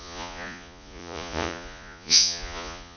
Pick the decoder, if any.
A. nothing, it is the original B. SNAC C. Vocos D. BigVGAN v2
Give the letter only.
C